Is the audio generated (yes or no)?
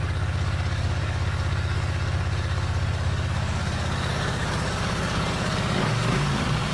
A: yes